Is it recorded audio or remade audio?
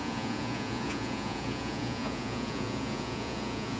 remade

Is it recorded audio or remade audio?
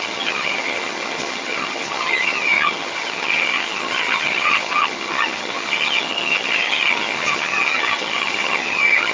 remade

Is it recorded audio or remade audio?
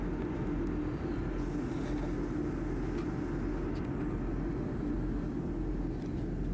recorded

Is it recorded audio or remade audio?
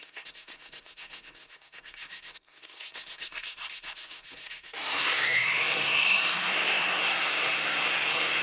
remade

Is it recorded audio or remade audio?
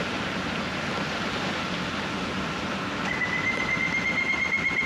recorded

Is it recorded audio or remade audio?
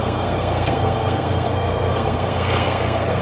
remade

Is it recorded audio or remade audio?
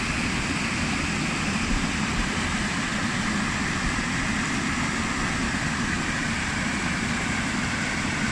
recorded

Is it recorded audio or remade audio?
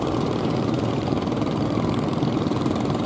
remade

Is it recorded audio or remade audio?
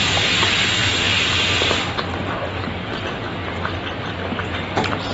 recorded